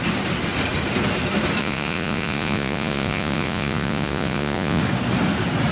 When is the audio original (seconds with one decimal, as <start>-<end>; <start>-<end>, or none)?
0.0-1.6; 4.8-5.7

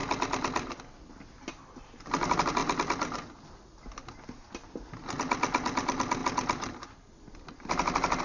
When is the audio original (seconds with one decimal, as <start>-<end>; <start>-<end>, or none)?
0.0-8.2

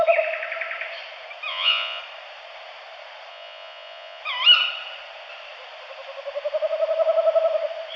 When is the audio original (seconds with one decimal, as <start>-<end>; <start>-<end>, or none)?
0.0-1.5; 2.0-3.3; 4.2-8.0

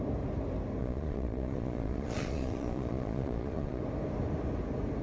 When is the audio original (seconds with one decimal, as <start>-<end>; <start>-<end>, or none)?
0.0-0.8; 3.8-5.0

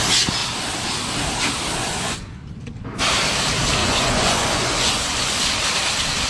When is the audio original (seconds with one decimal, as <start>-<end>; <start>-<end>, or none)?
0.0-1.8; 2.4-3.8; 5.4-6.3